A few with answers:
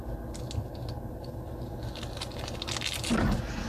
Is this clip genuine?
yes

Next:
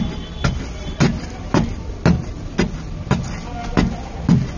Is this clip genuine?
yes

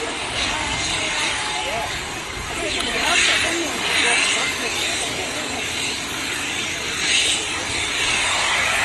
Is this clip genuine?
no